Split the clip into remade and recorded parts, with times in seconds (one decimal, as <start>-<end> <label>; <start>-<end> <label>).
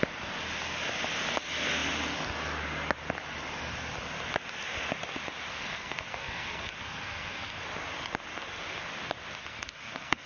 0.0-5.5 recorded; 5.5-7.6 remade; 7.6-9.4 recorded; 9.4-10.3 remade